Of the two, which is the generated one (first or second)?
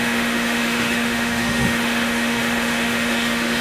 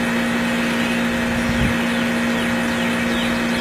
first